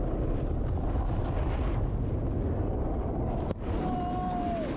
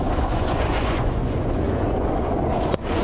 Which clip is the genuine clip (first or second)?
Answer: first